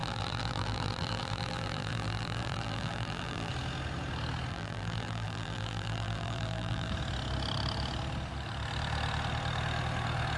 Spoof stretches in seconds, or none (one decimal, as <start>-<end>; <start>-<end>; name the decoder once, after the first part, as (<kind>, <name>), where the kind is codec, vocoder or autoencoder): 0.0-3.5 (vocoder, BigVGAN v2); 4.5-6.9